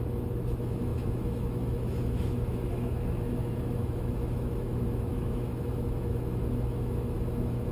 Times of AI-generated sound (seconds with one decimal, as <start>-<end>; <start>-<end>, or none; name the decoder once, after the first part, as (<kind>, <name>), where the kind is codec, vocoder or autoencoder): 0.0-7.7 (autoencoder, DAC-VAE)